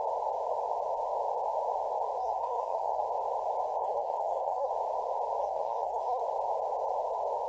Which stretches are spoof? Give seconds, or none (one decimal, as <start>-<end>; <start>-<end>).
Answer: 2.2-3.0; 3.8-4.7; 5.4-6.2

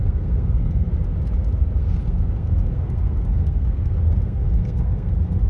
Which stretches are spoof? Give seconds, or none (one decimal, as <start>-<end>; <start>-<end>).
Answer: 0.0-0.9; 1.8-5.1

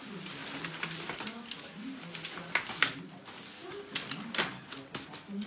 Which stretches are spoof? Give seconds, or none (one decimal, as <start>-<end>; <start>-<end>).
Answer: none

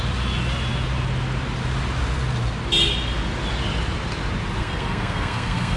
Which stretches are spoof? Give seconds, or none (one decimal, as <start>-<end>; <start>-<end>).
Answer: 4.6-5.8

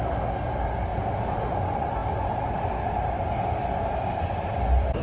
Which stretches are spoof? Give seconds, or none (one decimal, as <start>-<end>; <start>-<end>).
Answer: none